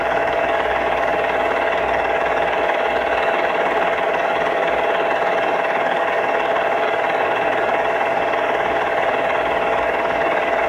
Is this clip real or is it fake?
fake